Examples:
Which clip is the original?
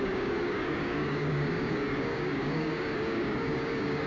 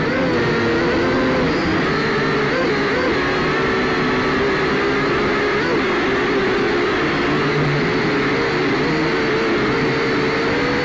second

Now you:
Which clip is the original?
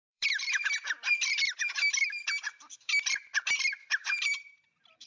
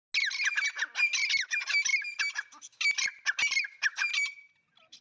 second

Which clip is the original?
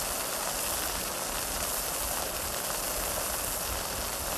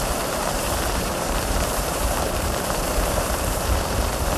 first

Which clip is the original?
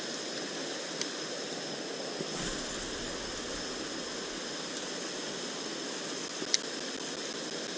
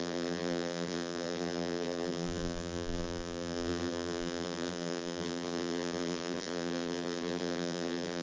first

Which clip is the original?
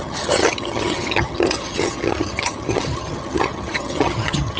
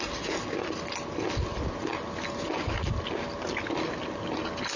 second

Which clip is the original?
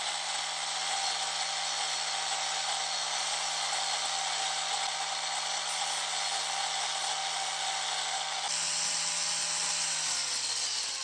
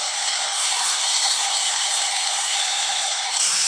first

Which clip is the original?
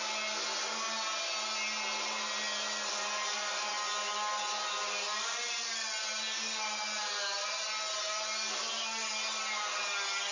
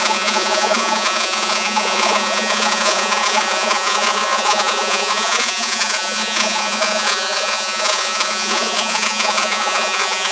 first